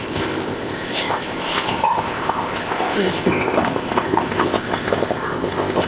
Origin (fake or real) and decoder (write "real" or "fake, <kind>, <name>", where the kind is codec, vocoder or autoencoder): fake, codec, ZipCodec